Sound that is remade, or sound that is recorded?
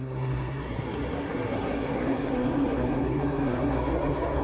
remade